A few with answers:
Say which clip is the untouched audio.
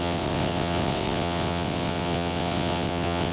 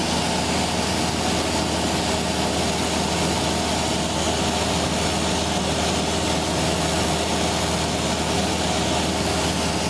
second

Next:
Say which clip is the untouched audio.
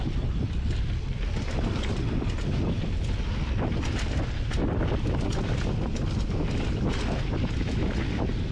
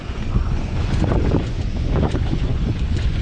first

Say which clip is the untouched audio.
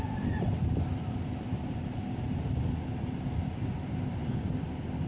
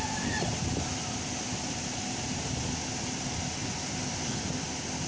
second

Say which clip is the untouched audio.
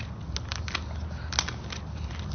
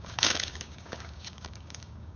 first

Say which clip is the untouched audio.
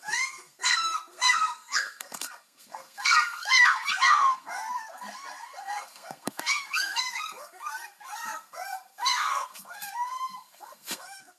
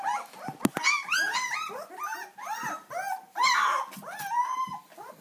second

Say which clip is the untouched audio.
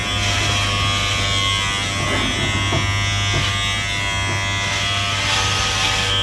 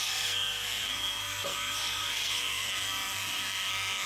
first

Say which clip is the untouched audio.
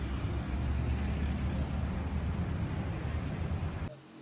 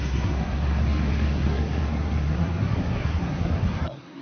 first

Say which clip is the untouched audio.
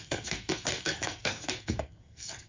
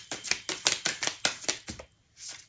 second